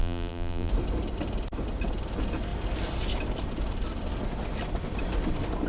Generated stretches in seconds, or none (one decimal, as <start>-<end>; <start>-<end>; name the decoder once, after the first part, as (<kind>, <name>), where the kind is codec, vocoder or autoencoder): 0.0-0.7 (vocoder, BigVGAN v2)